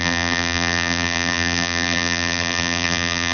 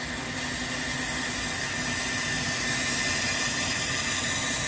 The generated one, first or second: first